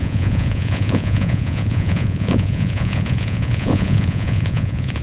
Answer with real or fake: fake